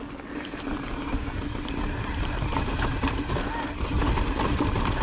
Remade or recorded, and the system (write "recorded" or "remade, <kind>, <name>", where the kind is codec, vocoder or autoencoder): recorded